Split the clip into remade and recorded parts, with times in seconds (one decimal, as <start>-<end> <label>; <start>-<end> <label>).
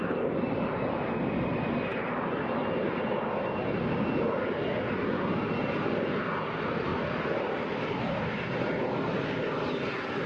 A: 0.0-10.3 recorded